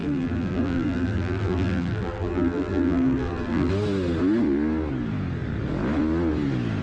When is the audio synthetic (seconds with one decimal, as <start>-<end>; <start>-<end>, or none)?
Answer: 0.0-3.7